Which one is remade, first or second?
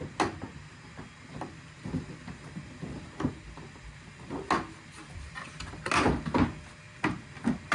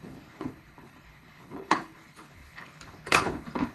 second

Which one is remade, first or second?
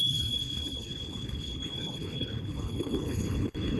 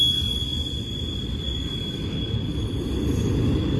first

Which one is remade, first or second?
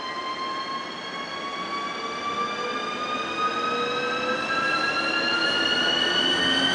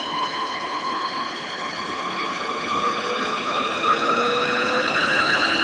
second